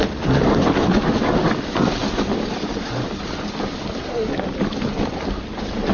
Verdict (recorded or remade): recorded